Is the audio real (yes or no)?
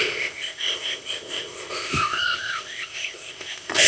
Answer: no